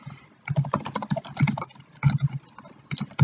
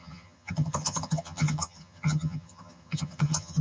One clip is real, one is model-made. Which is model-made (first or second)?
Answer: second